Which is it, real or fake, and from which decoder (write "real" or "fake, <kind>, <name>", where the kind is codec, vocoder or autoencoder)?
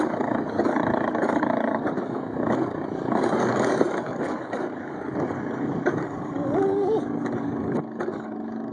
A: fake, codec, DAC